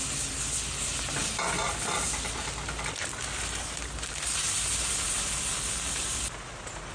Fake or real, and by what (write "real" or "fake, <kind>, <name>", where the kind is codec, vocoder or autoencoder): real